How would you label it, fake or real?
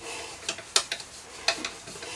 real